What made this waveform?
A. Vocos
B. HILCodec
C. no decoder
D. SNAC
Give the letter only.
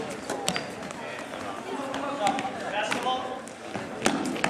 C